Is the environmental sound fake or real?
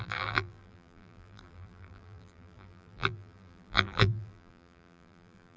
fake